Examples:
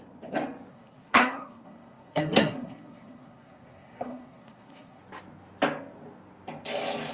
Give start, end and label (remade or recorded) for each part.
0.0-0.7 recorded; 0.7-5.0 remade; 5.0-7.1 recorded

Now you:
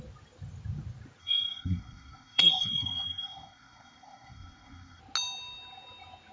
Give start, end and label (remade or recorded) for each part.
0.0-1.2 recorded; 1.2-5.0 remade; 5.0-6.3 recorded

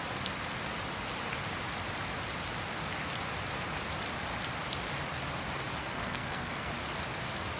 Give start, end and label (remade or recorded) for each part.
0.0-5.8 recorded; 5.8-6.7 remade; 6.7-7.6 recorded

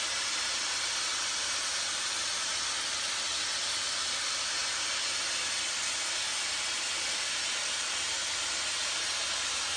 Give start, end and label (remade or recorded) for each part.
0.0-9.8 recorded

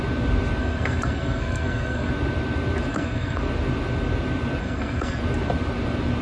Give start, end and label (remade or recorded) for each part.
0.0-0.6 recorded; 0.6-2.1 remade; 2.1-2.9 recorded; 2.9-3.4 remade; 3.4-4.6 recorded; 4.6-5.2 remade; 5.2-6.2 recorded

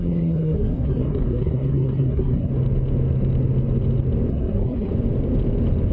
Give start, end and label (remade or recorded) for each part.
0.0-2.5 remade; 2.5-4.3 recorded; 4.3-4.9 remade; 4.9-5.9 recorded

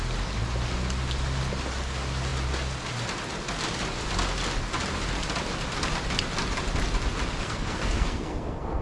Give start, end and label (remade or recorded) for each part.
0.0-7.4 recorded; 7.4-8.8 remade